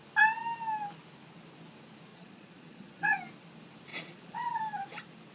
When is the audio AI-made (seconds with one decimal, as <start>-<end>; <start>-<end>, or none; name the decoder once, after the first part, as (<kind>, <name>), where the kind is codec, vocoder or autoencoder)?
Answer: 2.1-3.2 (vocoder, Vocos); 3.9-4.6